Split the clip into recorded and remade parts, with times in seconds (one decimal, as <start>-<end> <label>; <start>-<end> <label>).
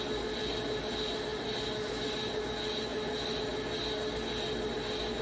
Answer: 0.0-5.2 recorded